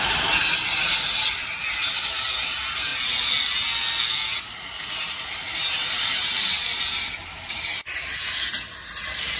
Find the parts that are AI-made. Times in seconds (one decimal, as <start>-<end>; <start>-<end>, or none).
0.0-2.9; 4.6-9.4